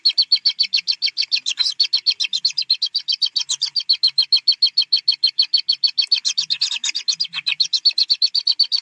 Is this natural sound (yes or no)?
yes